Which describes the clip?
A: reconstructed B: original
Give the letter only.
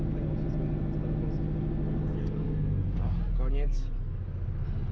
B